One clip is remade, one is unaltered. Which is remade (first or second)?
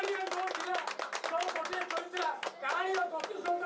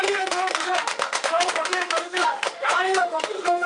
second